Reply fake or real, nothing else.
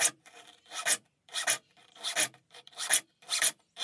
fake